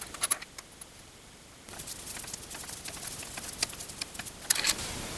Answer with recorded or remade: recorded